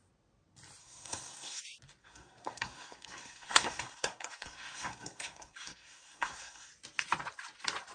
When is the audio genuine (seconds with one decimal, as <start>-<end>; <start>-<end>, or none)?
0.0-0.8; 1.6-2.0; 6.7-7.9